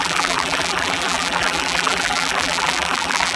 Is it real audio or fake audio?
fake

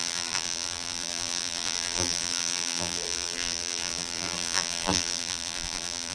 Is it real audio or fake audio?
fake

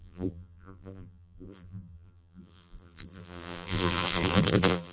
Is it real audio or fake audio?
fake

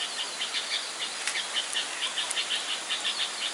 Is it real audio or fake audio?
real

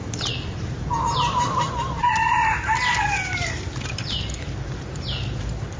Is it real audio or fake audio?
fake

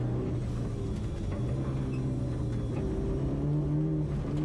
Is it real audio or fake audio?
real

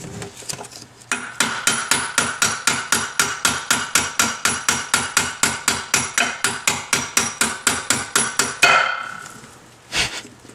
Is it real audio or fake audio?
real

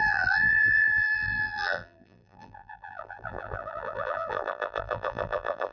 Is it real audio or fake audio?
fake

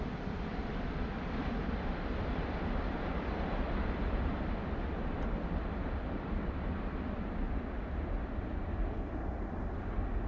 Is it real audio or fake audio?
fake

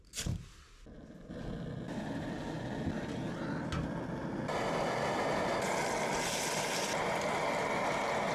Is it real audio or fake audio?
real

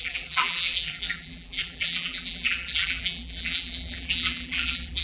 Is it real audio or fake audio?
fake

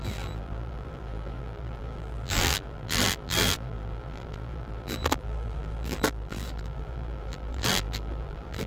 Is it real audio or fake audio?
fake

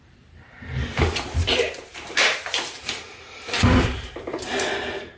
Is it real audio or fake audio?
fake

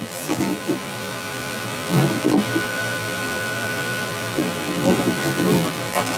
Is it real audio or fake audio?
fake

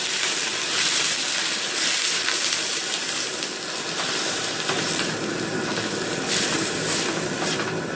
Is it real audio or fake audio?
fake